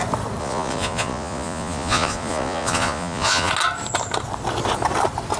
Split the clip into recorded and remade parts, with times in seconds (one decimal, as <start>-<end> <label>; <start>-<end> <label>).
0.0-0.4 recorded; 0.4-3.5 remade; 3.5-5.4 recorded